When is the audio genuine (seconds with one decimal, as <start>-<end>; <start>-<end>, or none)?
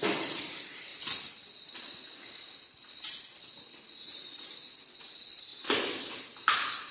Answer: 0.9-5.0; 5.5-6.1